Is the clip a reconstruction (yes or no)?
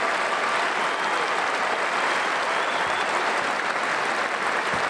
no